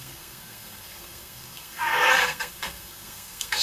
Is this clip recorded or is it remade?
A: remade